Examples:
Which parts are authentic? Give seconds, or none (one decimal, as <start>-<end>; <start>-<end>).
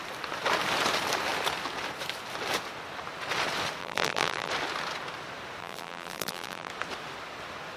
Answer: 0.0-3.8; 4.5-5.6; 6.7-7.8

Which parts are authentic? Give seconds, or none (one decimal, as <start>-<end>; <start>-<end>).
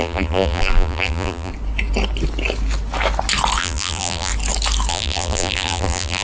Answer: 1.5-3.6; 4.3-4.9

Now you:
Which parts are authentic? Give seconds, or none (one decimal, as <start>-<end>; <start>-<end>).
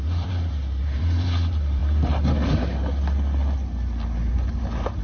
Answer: 1.8-5.0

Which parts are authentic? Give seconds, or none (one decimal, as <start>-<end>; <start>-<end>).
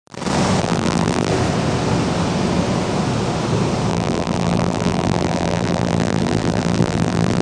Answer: 0.0-0.6; 1.3-3.9